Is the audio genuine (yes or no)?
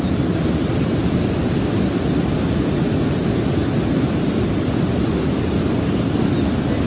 yes